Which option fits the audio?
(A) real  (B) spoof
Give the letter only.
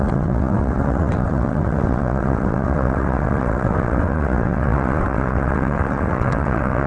B